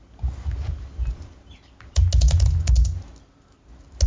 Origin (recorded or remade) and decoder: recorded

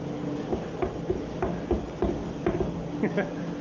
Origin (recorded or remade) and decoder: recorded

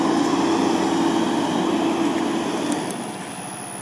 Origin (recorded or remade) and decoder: recorded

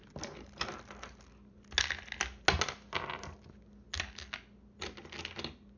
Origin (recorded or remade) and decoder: recorded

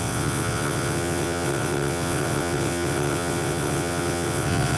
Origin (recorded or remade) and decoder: remade, vocoder, WaveNeXt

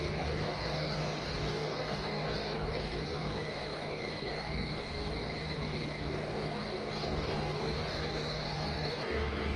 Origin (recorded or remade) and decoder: remade, codec, DAC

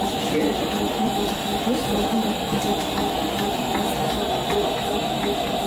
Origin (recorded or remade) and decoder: recorded